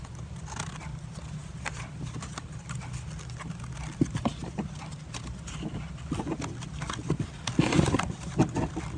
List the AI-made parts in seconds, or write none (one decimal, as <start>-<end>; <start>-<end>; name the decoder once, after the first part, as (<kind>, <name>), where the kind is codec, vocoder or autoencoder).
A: none